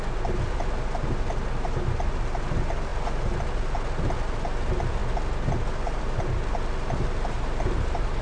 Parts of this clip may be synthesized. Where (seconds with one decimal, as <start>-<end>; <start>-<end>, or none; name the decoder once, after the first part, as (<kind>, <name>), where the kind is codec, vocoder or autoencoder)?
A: none